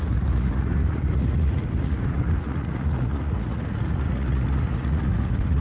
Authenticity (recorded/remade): remade